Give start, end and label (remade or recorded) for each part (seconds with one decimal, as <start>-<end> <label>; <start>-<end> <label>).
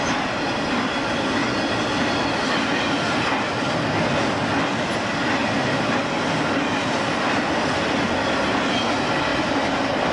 0.0-5.4 recorded; 5.4-7.0 remade; 7.0-10.1 recorded